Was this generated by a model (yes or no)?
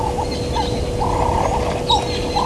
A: no